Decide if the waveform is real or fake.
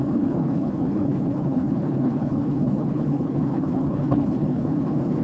fake